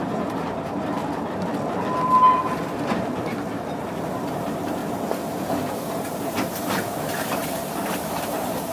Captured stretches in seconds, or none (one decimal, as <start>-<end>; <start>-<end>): 1.0-4.3; 4.8-6.6